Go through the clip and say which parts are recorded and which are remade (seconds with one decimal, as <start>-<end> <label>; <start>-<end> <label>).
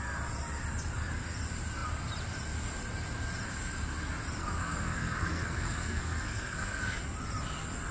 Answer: 0.0-4.4 recorded; 4.4-7.0 remade; 7.0-7.9 recorded